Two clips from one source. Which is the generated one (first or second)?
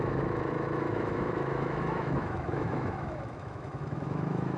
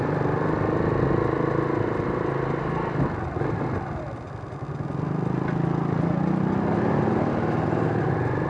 first